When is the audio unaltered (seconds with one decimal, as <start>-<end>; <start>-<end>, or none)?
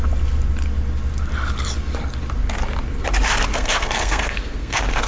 0.0-3.5